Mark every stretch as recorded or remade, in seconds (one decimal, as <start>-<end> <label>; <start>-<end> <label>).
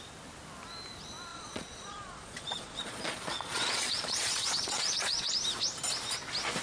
0.0-1.3 recorded; 1.3-5.3 remade; 5.3-6.6 recorded